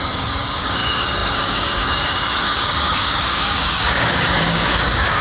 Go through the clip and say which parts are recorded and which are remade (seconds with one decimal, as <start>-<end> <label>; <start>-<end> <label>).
0.0-5.2 remade